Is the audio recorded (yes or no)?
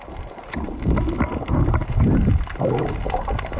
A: yes